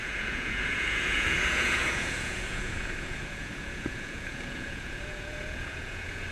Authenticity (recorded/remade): remade